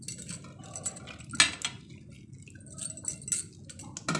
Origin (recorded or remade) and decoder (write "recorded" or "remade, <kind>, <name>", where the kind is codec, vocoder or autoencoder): recorded